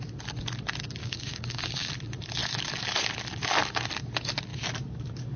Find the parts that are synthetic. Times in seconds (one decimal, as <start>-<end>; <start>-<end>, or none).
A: 1.0-1.9